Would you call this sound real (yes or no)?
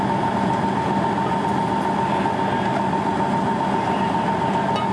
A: yes